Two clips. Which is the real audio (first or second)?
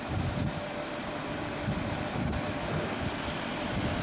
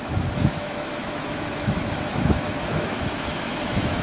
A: first